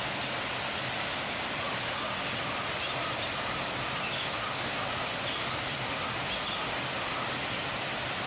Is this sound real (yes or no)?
yes